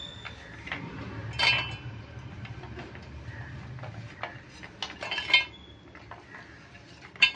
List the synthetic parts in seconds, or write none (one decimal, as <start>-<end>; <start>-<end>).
none